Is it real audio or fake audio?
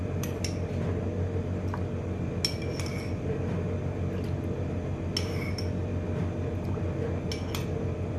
real